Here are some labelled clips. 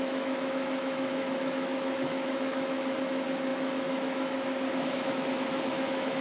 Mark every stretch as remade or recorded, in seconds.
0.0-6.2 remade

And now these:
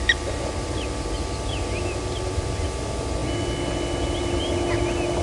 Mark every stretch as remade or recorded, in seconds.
0.0-5.2 recorded

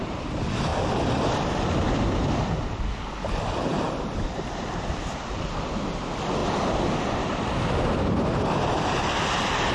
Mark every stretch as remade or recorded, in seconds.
0.0-3.7 remade; 3.7-4.9 recorded; 4.9-6.4 remade; 6.4-9.2 recorded; 9.2-9.7 remade